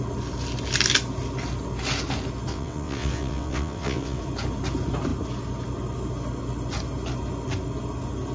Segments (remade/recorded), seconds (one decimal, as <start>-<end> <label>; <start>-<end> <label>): 0.0-2.5 recorded; 2.5-4.2 remade; 4.2-8.3 recorded